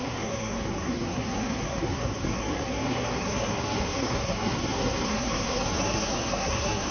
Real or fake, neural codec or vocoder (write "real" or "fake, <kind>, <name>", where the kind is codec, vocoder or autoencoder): fake, codec, SNAC